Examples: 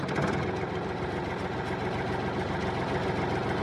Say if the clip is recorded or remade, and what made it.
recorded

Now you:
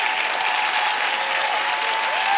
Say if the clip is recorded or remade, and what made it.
recorded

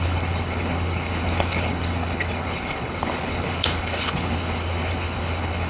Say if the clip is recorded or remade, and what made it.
remade, codec, HILCodec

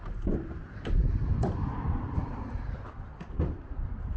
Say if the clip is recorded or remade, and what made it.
remade, vocoder, BigVGAN v2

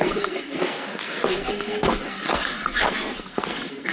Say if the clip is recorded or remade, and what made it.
remade, codec, SNAC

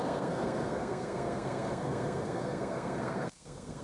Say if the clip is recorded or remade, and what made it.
remade, codec, SNAC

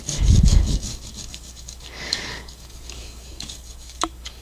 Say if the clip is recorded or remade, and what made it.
remade, codec, DAC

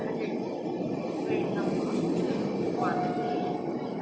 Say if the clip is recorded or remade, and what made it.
recorded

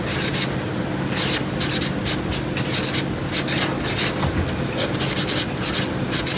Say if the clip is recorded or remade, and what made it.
recorded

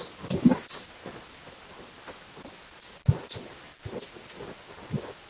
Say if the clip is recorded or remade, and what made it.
recorded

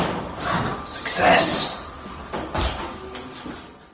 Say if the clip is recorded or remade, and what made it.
recorded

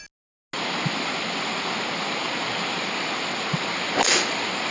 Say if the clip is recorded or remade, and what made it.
recorded